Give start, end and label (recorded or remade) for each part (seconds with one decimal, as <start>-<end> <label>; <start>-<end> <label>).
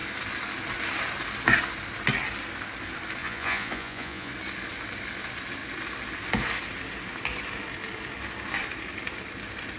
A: 0.0-3.2 recorded; 3.2-4.3 remade; 4.3-9.8 recorded